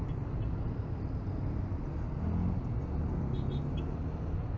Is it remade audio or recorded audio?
recorded